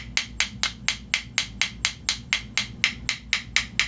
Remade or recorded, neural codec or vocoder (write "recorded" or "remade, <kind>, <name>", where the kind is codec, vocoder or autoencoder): recorded